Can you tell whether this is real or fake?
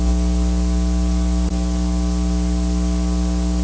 real